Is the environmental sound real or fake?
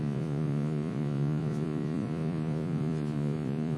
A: fake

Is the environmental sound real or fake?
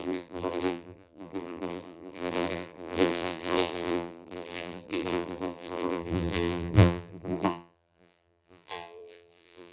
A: fake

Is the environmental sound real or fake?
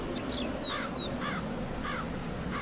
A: real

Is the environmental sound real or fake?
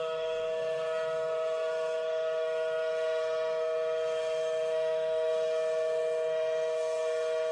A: fake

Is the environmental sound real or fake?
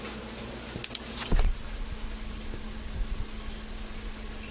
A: real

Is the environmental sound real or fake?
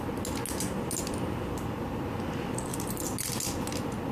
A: real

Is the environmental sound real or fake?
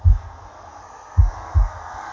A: fake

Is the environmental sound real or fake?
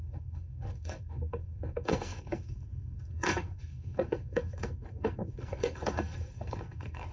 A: fake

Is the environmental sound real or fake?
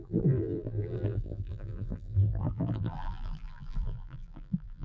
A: fake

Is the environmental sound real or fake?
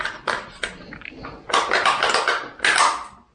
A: real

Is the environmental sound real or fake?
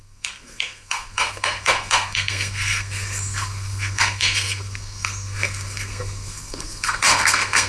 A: fake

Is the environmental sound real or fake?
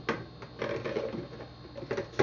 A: real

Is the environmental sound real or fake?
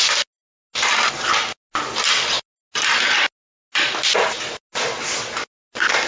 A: real